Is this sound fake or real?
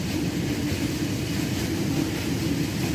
real